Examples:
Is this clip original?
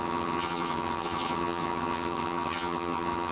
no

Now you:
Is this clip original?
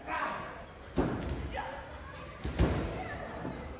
no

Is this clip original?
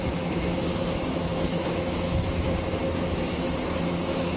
no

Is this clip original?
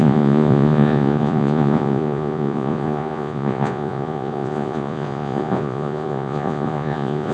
no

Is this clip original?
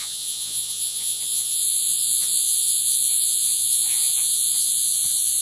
no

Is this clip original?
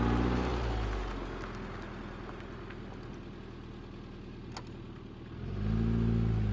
yes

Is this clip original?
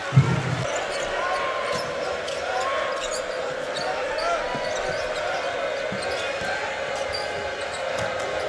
yes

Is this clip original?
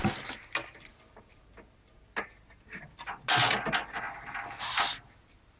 yes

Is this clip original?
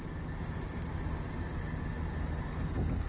yes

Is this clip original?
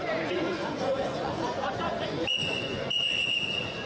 no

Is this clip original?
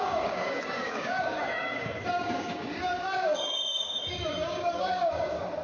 no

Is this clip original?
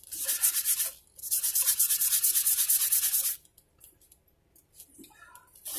yes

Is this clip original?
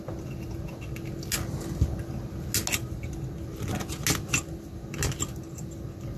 yes